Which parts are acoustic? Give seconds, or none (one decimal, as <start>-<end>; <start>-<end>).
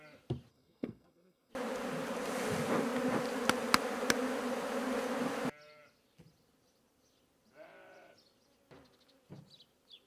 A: 0.0-0.5; 1.5-10.1